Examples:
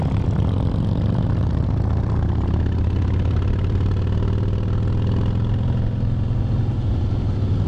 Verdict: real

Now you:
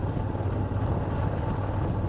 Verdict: real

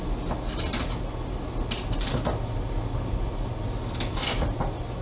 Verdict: real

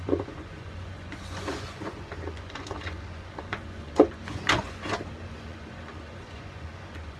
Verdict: fake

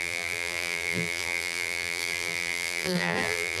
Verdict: fake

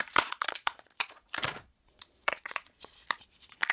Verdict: fake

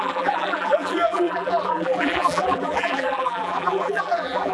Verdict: fake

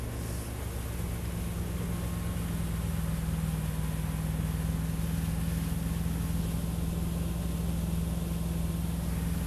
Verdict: real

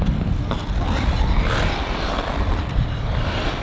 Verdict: real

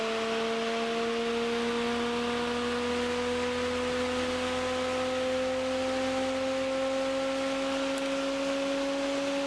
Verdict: real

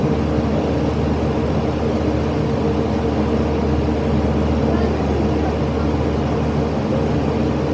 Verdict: real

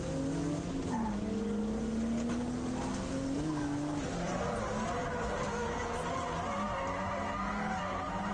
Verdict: real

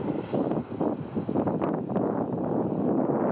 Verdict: real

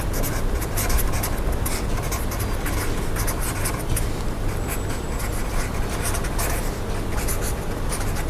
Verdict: real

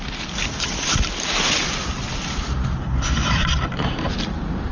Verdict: real